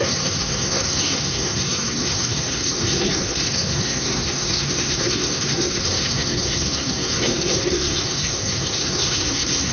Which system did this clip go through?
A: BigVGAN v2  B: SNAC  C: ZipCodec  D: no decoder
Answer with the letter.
B